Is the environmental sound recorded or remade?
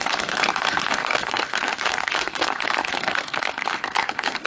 remade